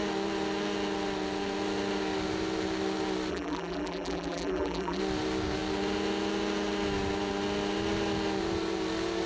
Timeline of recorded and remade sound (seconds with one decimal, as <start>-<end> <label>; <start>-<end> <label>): 0.0-3.3 recorded; 3.3-5.0 remade; 5.0-9.3 recorded